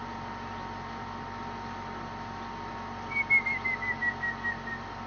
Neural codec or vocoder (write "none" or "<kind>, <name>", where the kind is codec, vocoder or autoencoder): none